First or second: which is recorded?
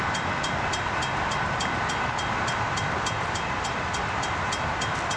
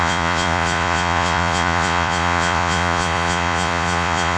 first